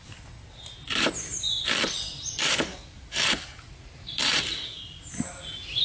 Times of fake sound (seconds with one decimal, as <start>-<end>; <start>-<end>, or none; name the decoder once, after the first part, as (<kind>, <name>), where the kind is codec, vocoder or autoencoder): 1.3-3.2 (vocoder, BigVGAN v2)